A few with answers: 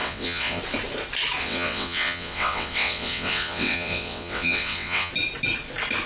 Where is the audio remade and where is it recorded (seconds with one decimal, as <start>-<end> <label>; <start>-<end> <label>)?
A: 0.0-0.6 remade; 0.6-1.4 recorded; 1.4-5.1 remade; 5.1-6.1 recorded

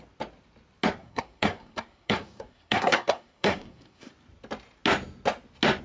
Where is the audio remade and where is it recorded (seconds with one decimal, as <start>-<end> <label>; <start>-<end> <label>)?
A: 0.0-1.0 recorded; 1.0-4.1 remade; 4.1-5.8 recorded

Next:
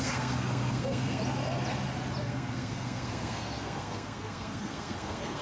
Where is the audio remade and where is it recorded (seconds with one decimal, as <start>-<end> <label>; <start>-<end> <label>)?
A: 0.0-1.2 remade; 1.2-2.2 recorded; 2.2-5.4 remade

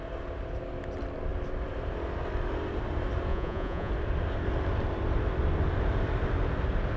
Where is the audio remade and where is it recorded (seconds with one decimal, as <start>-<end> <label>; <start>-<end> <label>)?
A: 0.0-3.3 recorded; 3.3-3.9 remade; 3.9-7.0 recorded